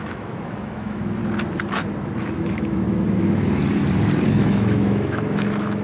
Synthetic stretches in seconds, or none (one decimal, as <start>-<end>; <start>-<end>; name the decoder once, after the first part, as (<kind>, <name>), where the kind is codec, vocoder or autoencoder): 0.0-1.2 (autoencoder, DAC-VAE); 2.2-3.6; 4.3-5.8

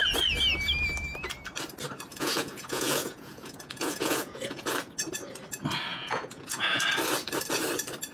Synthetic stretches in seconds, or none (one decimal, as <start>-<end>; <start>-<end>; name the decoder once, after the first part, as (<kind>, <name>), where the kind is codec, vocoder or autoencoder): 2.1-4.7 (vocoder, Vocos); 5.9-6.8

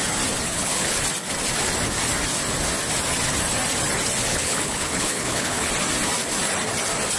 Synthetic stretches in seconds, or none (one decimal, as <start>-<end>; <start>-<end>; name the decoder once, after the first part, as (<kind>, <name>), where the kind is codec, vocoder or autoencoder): 0.5-1.0 (codec, HILCodec); 4.3-5.7

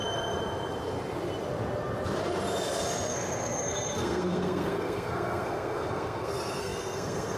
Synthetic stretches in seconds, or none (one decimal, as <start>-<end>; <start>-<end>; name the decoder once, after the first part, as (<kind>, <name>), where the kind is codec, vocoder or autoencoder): 3.1-7.4 (codec, SNAC)